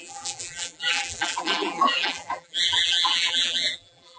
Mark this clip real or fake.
fake